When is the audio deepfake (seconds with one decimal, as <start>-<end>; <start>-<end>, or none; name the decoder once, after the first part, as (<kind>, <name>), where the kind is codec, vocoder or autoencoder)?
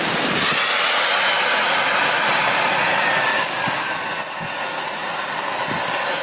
3.3-3.9 (codec, DAC)